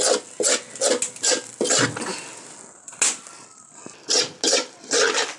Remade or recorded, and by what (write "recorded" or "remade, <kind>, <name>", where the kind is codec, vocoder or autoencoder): recorded